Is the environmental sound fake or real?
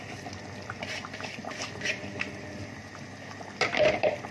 real